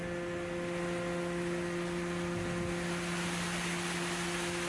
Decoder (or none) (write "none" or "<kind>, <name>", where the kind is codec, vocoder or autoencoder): none